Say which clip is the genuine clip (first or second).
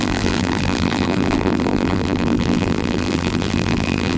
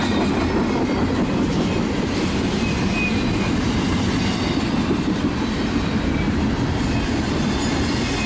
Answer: second